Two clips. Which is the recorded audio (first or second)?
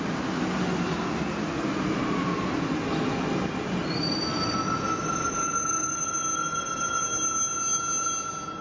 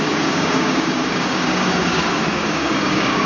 first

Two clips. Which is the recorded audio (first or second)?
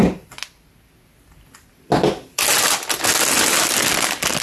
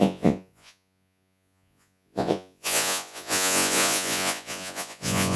first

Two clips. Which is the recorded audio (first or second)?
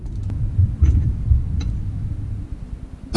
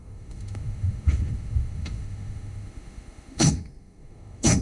first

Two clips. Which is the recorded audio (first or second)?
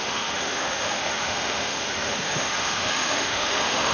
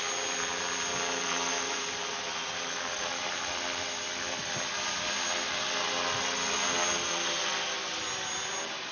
second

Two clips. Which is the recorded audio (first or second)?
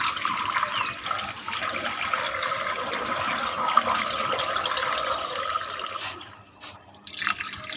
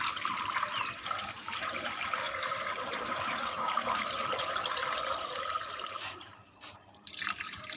first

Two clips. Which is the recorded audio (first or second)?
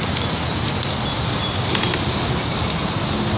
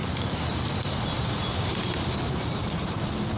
first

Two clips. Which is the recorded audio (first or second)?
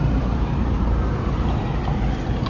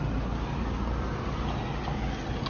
second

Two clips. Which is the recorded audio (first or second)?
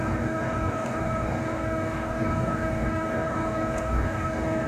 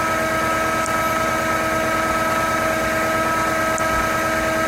second